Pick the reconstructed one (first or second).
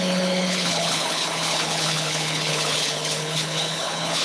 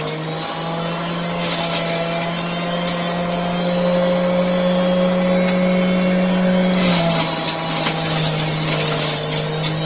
first